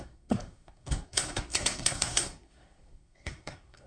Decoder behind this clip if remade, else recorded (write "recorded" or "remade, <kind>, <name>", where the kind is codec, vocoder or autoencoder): remade, codec, SNAC